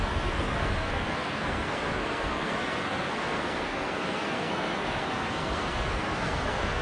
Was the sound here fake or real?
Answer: fake